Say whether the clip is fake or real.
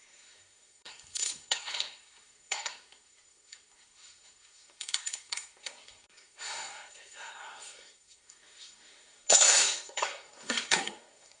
fake